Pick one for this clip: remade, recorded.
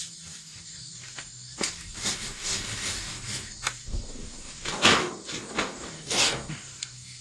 remade